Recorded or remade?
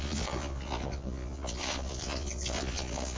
remade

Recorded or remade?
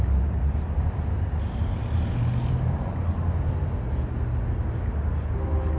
recorded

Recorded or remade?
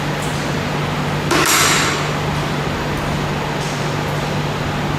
recorded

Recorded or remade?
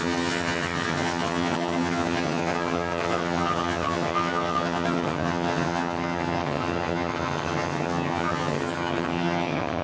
remade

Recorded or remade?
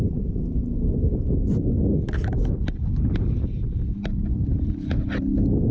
recorded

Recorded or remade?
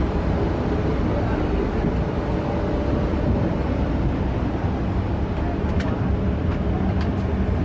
recorded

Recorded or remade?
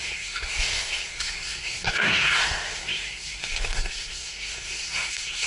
remade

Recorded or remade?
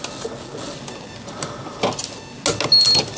recorded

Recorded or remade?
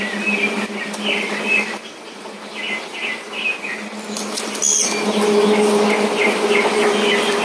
recorded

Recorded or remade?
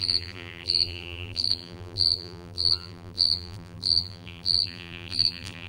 remade